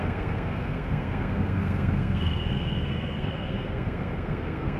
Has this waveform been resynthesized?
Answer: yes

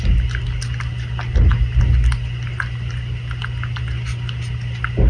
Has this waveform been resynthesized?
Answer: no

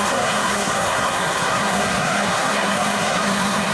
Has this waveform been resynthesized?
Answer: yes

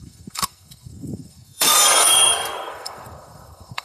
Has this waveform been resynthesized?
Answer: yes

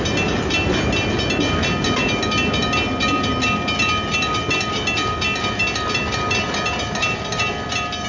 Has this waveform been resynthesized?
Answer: no